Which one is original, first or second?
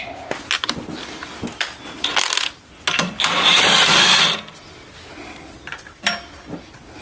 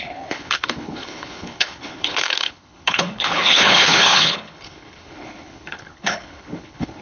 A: first